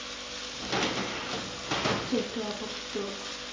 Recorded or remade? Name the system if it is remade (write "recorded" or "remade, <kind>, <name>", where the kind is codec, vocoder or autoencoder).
recorded